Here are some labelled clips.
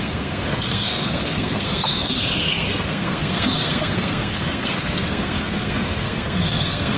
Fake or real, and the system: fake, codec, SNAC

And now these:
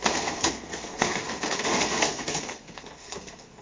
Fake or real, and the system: fake, codec, SNAC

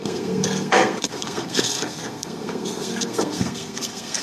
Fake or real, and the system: fake, codec, SNAC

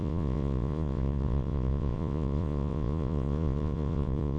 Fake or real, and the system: fake, vocoder, Vocos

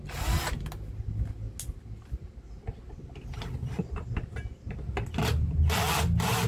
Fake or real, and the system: real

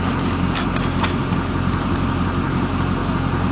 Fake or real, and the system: real